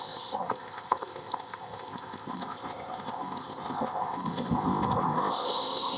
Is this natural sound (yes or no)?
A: no